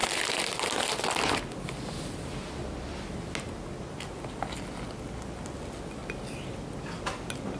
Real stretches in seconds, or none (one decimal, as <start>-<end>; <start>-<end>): 0.0-7.6